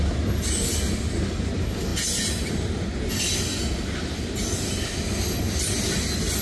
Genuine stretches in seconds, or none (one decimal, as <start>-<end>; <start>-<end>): 0.0-6.4